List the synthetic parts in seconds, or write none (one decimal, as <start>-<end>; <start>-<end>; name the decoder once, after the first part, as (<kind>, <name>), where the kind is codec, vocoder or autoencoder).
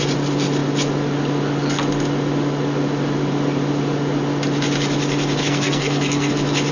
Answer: 5.4-6.3 (codec, SNAC)